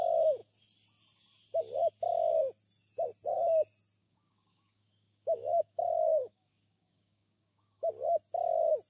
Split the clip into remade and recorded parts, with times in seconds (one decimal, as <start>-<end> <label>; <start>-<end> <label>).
0.0-4.0 recorded; 4.0-7.9 remade; 7.9-8.9 recorded